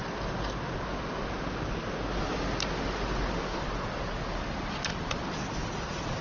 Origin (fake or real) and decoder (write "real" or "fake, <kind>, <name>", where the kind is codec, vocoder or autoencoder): real